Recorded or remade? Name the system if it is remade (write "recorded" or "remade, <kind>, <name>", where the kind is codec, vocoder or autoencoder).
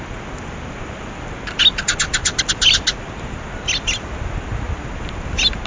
recorded